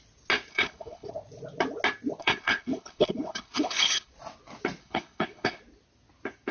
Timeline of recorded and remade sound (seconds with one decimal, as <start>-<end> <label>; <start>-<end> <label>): 0.0-0.5 recorded; 0.5-1.1 remade; 1.1-2.2 recorded; 2.2-4.1 remade; 4.1-4.8 recorded; 4.8-5.6 remade; 5.6-6.5 recorded